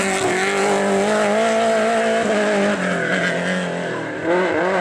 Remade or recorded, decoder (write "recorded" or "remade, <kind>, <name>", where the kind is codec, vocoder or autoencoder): recorded